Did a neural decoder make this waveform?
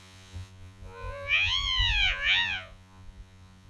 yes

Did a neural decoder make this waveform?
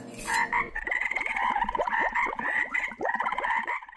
yes